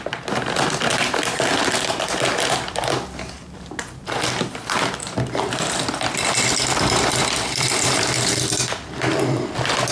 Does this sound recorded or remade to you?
remade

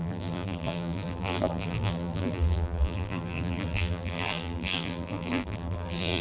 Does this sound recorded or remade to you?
remade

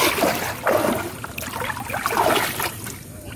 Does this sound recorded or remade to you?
recorded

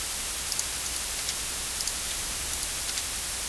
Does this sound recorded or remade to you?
remade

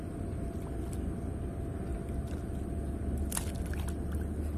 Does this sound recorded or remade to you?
recorded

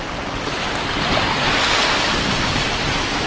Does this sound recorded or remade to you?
recorded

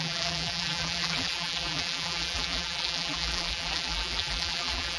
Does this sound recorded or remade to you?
remade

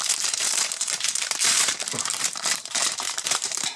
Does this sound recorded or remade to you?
remade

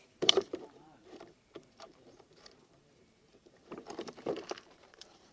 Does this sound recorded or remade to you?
remade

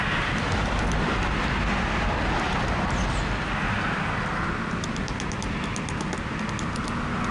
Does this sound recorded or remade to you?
recorded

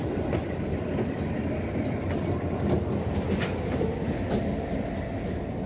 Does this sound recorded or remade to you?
remade